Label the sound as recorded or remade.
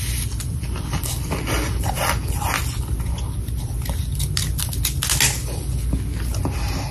recorded